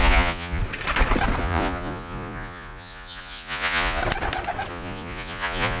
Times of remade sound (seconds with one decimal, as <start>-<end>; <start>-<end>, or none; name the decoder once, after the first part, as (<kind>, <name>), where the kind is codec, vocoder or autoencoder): 0.0-0.6 (vocoder, Vocos); 1.4-4.0; 4.7-5.8